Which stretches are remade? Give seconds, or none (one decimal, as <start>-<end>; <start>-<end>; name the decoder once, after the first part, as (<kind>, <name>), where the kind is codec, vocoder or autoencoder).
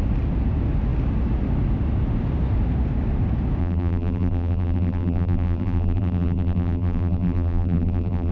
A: 3.6-8.3 (vocoder, BigVGAN v2)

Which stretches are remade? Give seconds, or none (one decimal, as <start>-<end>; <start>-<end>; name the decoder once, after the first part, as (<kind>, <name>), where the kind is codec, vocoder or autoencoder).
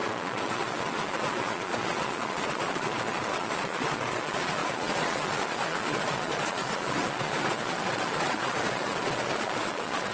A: 0.0-10.1 (vocoder, Vocos)